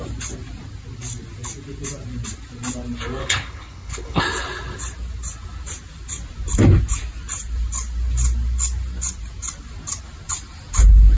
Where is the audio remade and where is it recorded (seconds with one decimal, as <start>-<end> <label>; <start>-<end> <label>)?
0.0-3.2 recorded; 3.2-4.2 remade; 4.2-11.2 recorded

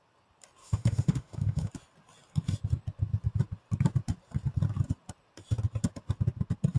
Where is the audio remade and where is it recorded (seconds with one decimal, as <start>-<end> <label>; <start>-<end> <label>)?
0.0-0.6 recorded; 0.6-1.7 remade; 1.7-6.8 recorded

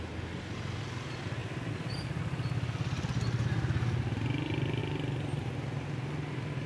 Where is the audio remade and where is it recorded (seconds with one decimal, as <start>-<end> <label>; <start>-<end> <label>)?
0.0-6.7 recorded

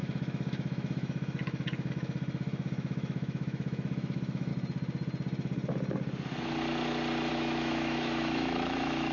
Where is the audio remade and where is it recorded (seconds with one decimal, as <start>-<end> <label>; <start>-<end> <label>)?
0.0-4.5 remade; 4.5-7.3 recorded; 7.3-9.1 remade